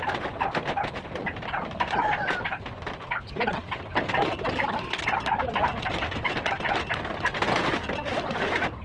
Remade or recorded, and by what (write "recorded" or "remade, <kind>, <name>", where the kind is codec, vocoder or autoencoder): recorded